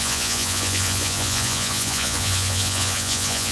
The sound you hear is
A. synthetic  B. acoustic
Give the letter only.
A